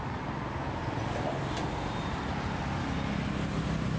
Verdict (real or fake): real